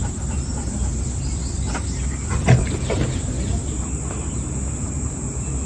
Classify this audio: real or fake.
real